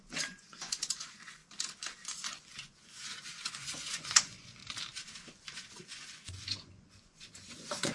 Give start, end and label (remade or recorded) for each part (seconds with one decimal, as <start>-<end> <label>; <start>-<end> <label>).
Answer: 0.0-1.4 remade; 1.4-2.3 recorded; 2.3-4.6 remade; 4.6-5.8 recorded; 5.8-7.9 remade